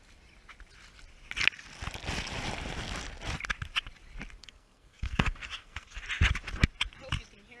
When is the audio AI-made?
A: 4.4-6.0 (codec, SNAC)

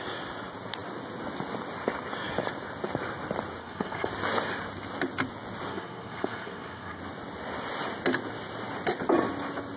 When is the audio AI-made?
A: 3.6-4.1 (codec, SNAC); 5.7-7.0

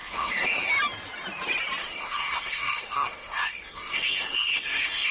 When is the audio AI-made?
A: 0.0-0.7 (codec, SNAC); 1.8-5.1

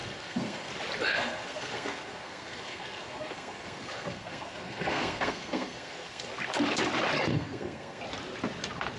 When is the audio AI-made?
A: 0.0-0.7 (codec, SNAC); 1.1-6.3; 7.3-8.0

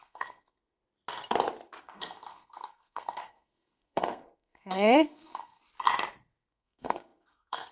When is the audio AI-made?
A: 0.0-0.8 (codec, SNAC); 1.8-5.6; 6.5-7.7

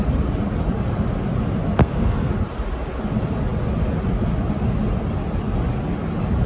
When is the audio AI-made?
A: 1.8-2.3 (codec, SNAC)

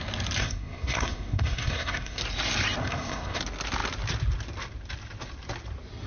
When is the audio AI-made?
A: 0.4-2.2 (codec, SNAC); 2.8-3.4

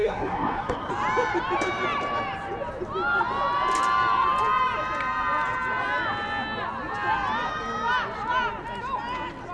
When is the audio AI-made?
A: 0.0-0.9 (codec, SNAC)